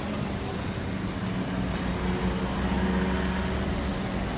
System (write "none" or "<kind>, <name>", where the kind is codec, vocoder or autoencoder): none